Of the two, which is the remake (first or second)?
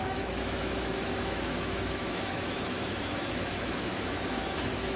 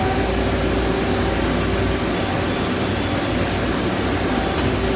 first